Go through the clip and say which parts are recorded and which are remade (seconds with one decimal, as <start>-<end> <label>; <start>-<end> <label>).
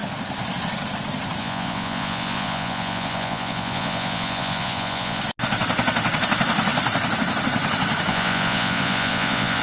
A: 0.0-1.4 recorded; 1.4-5.2 remade; 5.2-8.1 recorded; 8.1-9.6 remade